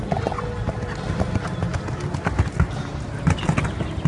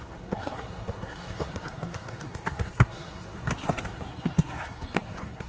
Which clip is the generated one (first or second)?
second